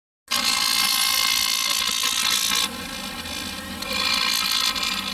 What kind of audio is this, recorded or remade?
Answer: recorded